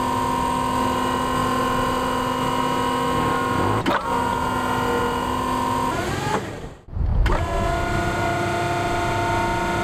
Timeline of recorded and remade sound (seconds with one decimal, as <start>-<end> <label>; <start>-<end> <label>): 0.0-9.8 recorded